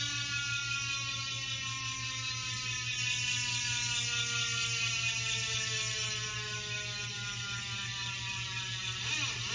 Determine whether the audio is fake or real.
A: real